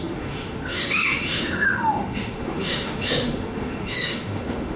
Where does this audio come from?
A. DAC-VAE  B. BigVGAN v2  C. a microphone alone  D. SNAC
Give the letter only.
A